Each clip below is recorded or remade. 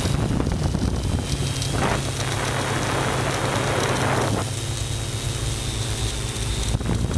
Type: recorded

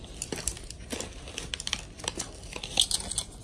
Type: recorded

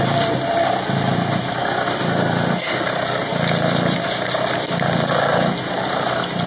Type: remade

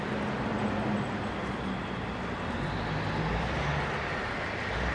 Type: recorded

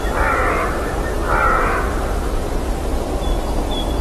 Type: recorded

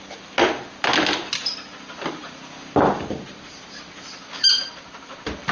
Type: recorded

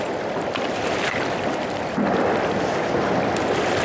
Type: recorded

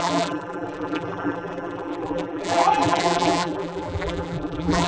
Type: remade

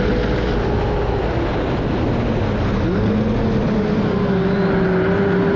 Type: recorded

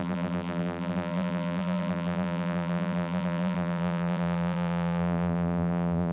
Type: remade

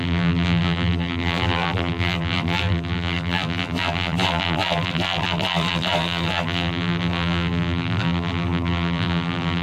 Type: remade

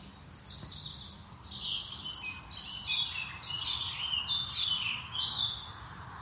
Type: recorded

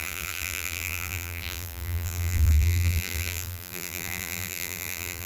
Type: remade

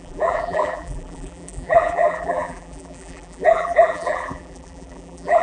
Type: remade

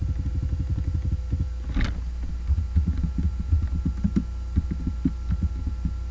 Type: recorded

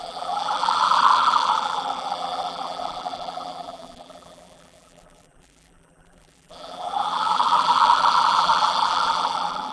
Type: remade